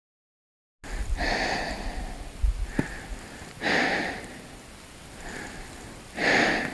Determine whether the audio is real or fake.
real